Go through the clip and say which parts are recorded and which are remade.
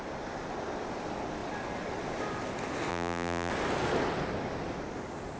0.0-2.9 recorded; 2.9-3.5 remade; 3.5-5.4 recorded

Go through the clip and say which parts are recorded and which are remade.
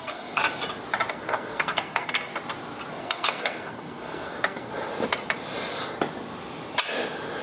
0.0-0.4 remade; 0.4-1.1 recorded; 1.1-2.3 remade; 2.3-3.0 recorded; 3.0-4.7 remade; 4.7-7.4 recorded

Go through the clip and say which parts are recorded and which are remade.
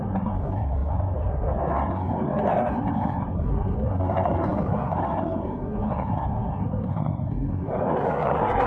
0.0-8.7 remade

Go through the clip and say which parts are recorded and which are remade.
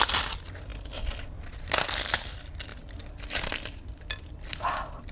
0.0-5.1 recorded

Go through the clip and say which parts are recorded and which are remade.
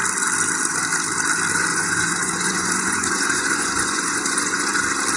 0.0-1.7 recorded; 1.7-4.8 remade; 4.8-5.2 recorded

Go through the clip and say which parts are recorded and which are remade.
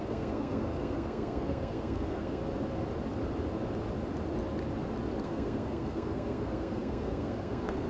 0.0-2.4 remade; 2.4-5.2 recorded; 5.2-7.9 remade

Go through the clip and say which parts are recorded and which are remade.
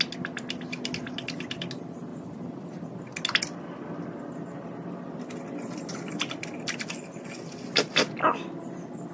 0.0-2.1 recorded; 2.1-2.8 remade; 2.8-9.1 recorded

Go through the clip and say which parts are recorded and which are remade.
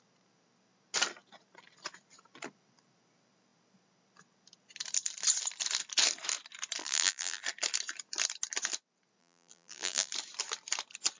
0.0-6.8 recorded; 6.8-7.4 remade; 7.4-9.2 recorded; 9.2-10.1 remade; 10.1-11.2 recorded